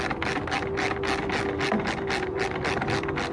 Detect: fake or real real